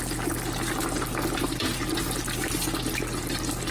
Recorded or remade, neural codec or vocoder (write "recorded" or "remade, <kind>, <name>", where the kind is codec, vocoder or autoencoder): recorded